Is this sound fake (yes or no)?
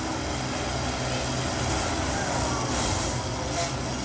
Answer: no